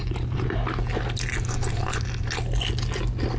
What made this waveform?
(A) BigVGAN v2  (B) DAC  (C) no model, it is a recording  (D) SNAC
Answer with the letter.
C